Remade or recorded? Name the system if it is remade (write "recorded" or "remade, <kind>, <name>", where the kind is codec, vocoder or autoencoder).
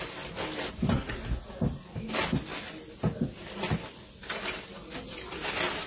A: recorded